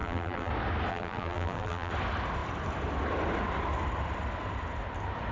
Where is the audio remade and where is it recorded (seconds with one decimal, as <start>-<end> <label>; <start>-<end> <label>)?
0.0-0.5 remade; 0.5-0.9 recorded; 0.9-1.9 remade; 1.9-5.3 recorded